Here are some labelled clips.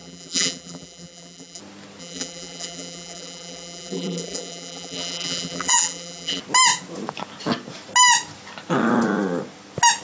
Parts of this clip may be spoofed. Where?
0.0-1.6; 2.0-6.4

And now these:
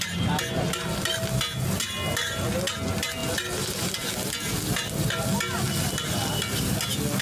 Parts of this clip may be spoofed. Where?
none